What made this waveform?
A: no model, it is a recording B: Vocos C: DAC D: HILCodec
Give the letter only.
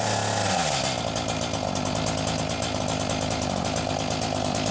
A